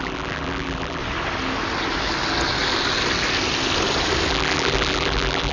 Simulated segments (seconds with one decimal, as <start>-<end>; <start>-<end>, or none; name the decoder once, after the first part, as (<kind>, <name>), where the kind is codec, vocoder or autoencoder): 0.0-1.0 (vocoder, BigVGAN v2); 4.3-5.5